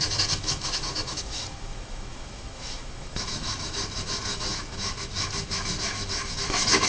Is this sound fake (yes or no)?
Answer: yes